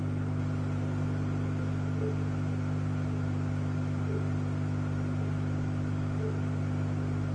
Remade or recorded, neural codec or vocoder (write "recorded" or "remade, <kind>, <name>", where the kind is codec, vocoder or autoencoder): recorded